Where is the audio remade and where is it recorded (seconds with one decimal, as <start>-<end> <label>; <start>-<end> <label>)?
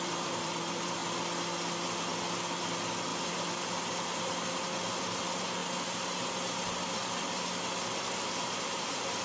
0.0-1.0 remade; 1.0-2.4 recorded; 2.4-3.1 remade; 3.1-5.0 recorded; 5.0-5.6 remade; 5.6-8.0 recorded; 8.0-9.2 remade